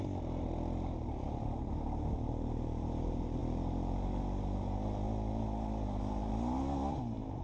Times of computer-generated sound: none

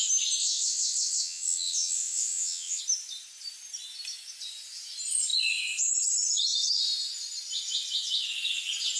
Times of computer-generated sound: 0.4-2.8